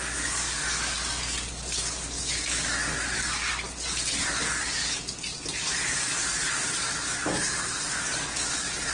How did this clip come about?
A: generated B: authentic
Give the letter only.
A